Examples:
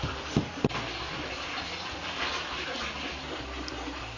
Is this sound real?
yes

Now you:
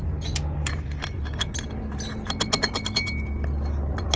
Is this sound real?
yes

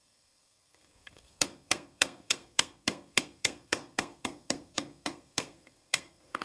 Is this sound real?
no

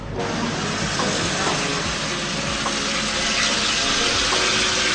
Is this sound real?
yes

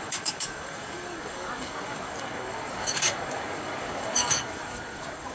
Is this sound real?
no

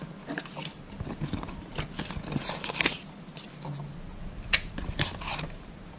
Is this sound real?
yes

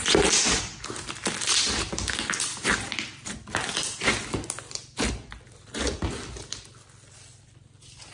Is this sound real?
yes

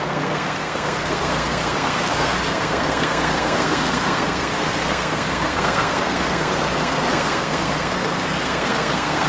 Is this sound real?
no